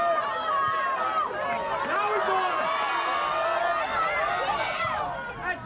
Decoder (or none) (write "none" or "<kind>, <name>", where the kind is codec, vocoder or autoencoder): none